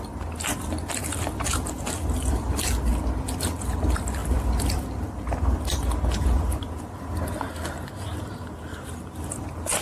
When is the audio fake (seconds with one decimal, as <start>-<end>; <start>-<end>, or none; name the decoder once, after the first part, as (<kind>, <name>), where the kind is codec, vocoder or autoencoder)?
0.0-2.9 (vocoder, BigVGAN v2); 3.4-9.8